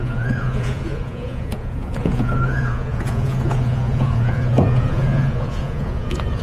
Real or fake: fake